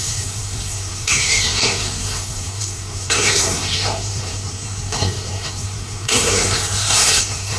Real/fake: fake